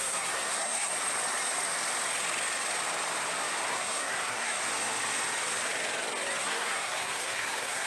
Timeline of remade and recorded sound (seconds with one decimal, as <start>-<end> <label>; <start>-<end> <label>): 0.0-0.9 remade; 0.9-3.7 recorded; 3.7-4.6 remade; 4.6-6.4 recorded; 6.4-7.9 remade